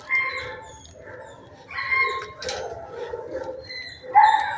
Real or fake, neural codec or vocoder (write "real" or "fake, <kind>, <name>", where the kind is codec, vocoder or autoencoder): real